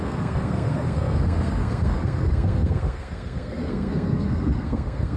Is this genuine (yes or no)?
no